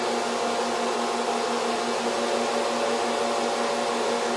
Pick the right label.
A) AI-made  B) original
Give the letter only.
B